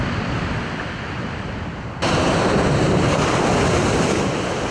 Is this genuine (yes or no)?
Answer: yes